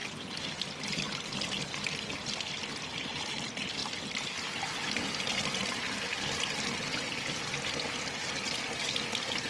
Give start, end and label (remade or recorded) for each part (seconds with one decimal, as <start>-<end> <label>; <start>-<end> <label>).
0.0-9.5 recorded